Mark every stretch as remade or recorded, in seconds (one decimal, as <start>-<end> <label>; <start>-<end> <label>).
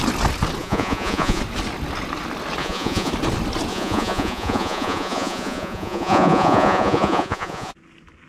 0.0-0.6 recorded; 0.6-1.4 remade; 1.4-2.6 recorded; 2.6-3.1 remade; 3.1-3.7 recorded; 3.7-7.7 remade; 7.7-8.3 recorded